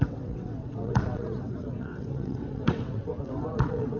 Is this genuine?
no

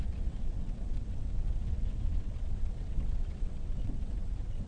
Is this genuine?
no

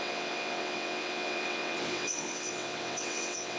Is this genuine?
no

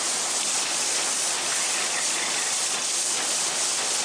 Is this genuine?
yes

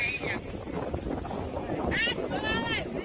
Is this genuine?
yes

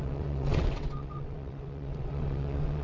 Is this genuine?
no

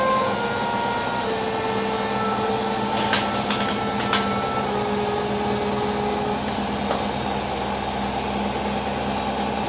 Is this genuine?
yes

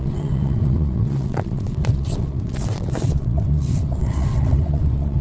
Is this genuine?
no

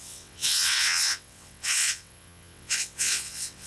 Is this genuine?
no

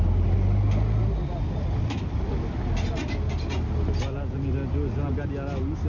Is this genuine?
yes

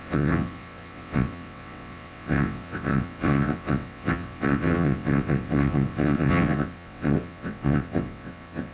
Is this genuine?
no